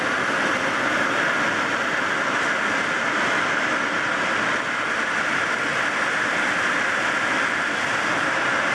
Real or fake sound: real